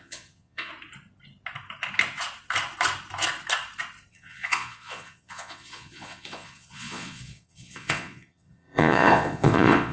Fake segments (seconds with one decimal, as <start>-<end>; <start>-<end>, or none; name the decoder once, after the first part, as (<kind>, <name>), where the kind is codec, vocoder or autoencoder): 0.0-0.7 (vocoder, Vocos); 4.1-9.9